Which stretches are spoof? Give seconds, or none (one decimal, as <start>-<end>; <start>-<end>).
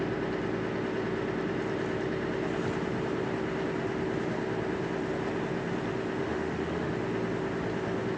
6.2-6.9